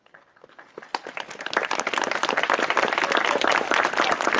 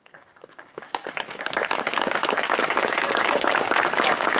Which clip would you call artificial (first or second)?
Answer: second